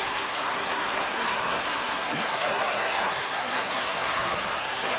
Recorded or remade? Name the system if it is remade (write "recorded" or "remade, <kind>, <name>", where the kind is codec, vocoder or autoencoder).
remade, codec, SNAC